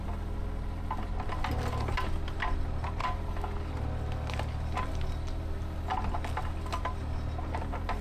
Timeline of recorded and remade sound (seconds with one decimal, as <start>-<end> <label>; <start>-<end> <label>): 0.0-8.0 recorded